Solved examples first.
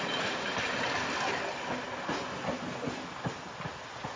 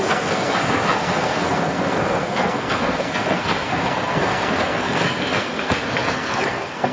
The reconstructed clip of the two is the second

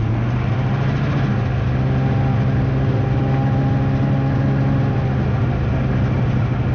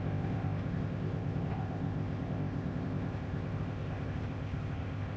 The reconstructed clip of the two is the second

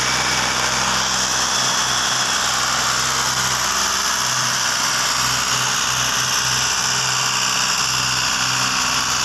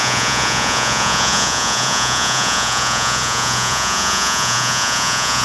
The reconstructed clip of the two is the second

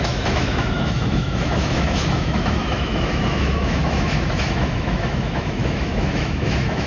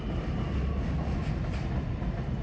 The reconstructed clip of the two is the first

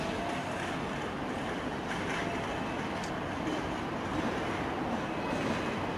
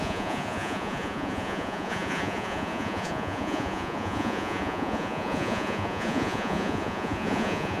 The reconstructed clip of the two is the second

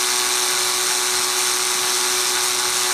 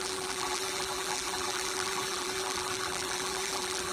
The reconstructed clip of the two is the second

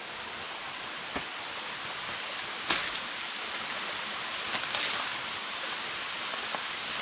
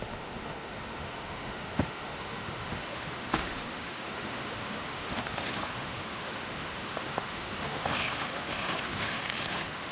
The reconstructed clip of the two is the second